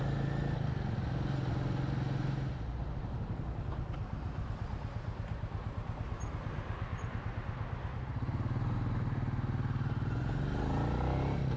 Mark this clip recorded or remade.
recorded